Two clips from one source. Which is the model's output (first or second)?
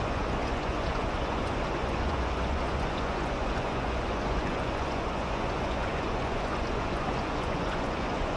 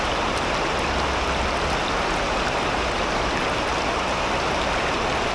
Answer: first